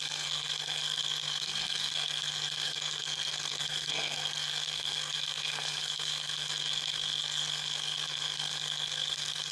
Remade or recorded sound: remade